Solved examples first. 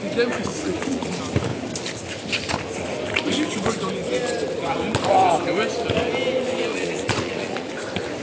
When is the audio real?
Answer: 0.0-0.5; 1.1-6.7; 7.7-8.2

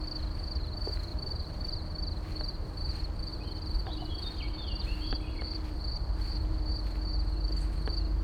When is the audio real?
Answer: 0.0-1.1; 1.8-3.3; 6.7-8.2